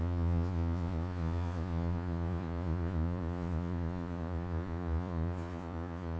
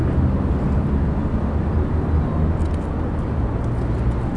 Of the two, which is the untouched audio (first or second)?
second